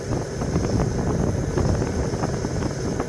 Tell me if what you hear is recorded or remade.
remade